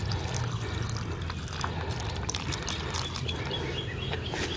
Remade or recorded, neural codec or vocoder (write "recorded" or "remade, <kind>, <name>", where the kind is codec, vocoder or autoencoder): recorded